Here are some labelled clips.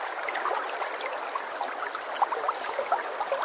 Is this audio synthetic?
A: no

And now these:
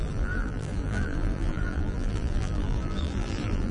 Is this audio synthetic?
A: yes